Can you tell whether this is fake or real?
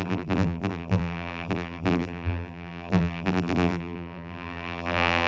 fake